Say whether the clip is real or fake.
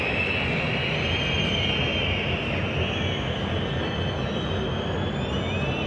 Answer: real